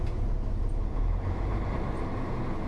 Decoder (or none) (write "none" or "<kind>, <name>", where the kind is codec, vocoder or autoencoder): none